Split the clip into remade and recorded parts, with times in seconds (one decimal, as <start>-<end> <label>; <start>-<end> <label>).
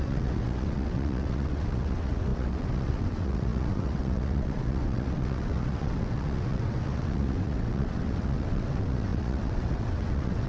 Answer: 0.0-10.5 remade